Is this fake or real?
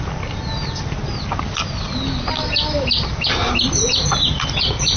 real